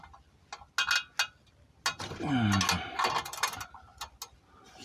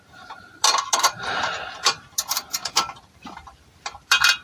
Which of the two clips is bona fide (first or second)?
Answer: first